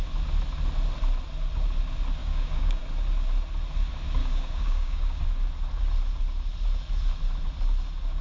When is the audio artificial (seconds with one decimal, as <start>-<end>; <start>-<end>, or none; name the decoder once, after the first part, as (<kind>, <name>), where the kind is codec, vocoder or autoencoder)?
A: 2.2-2.8 (codec, DAC); 4.2-5.2